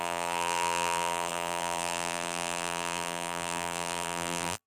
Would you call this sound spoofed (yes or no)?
yes